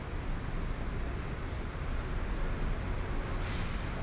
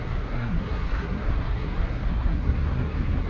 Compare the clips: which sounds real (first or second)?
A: first